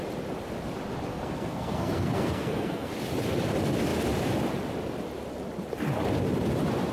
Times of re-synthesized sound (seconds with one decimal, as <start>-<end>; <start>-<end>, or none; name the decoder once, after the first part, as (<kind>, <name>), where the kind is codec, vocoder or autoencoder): 1.1-2.9 (codec, SNAC)